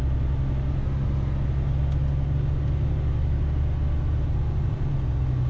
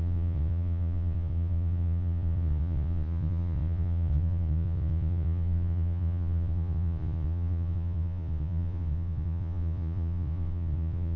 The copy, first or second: second